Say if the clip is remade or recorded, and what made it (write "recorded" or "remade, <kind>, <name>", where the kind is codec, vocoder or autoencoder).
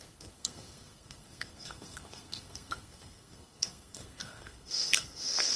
remade, codec, SNAC